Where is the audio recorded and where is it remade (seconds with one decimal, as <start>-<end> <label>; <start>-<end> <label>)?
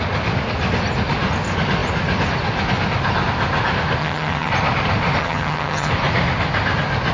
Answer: 0.0-4.0 recorded; 4.0-4.5 remade; 4.5-5.2 recorded; 5.2-5.9 remade; 5.9-7.1 recorded